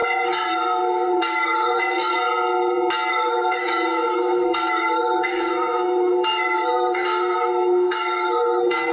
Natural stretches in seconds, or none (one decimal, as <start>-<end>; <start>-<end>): 2.2-3.1